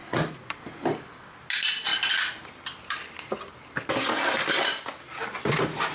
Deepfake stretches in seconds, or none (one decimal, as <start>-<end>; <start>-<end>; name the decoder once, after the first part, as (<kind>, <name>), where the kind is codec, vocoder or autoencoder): 0.0-0.6 (vocoder, Vocos)